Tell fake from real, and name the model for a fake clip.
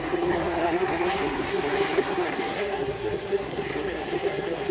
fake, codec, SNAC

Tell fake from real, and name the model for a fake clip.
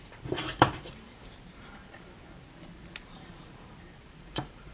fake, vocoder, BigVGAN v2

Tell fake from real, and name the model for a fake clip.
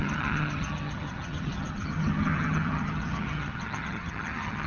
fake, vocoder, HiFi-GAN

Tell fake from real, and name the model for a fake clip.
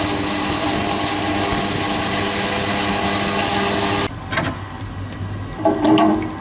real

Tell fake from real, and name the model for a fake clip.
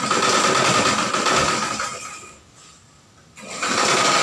real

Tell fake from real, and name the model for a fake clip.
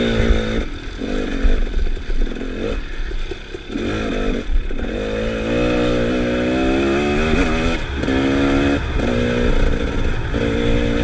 real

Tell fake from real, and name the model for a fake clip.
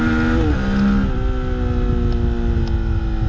real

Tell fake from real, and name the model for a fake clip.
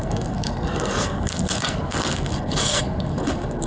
fake, codec, SNAC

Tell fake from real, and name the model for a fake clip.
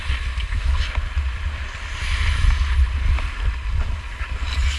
real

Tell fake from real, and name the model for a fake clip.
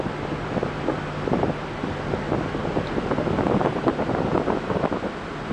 real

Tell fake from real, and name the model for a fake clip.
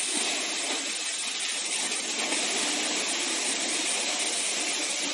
real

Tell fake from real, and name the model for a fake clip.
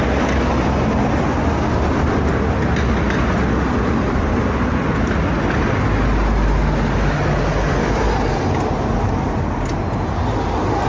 real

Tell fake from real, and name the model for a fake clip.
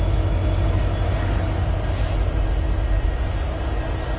real